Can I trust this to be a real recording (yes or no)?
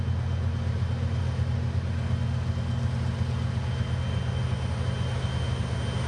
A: yes